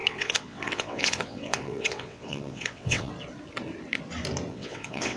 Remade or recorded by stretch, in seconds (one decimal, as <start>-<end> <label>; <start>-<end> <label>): 0.0-3.1 remade; 3.1-4.5 recorded; 4.5-5.2 remade